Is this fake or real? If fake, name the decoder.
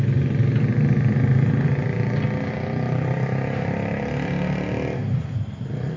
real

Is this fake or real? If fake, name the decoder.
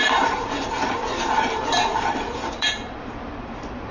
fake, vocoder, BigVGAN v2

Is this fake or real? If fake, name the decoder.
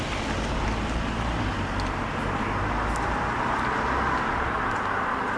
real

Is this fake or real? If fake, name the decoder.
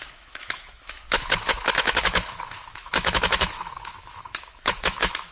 fake, autoencoder, DAC-VAE